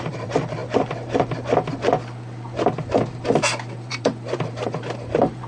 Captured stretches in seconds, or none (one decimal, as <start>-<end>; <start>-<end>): 0.6-3.9